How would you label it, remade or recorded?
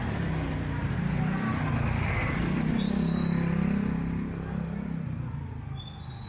recorded